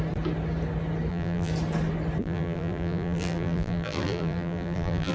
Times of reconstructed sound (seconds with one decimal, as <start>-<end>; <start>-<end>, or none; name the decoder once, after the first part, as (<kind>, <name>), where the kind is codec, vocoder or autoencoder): 1.1-1.5 (vocoder, BigVGAN v2); 2.2-5.1